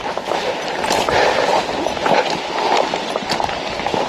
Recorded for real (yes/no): yes